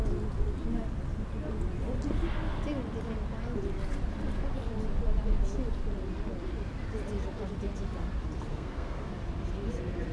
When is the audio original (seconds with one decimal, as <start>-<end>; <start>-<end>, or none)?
0.0-8.5; 9.1-10.1

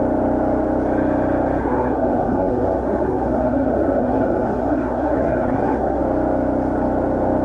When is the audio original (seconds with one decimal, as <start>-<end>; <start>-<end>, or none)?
0.0-1.6; 6.0-7.4

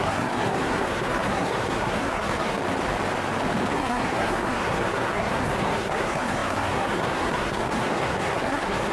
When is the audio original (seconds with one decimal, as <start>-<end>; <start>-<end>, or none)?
2.6-3.7

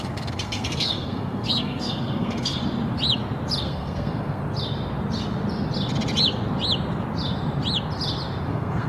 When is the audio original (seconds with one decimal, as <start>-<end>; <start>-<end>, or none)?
2.6-3.6; 4.4-8.5